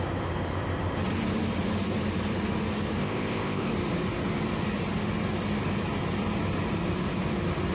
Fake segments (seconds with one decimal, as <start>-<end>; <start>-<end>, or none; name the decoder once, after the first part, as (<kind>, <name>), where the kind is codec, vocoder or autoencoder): 3.0-3.7 (codec, ZipCodec)